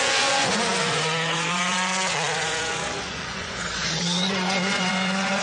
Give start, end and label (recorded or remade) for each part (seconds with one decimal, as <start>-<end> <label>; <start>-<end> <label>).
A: 0.0-5.4 remade